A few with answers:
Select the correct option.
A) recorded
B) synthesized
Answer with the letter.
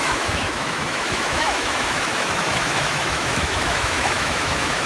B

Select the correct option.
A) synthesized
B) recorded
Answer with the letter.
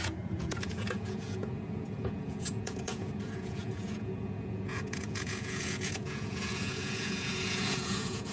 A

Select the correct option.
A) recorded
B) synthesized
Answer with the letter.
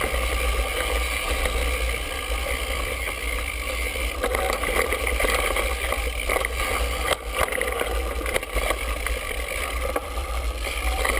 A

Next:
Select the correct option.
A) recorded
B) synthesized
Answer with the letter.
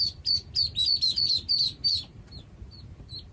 A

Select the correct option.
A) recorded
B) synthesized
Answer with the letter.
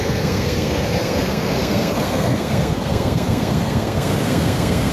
B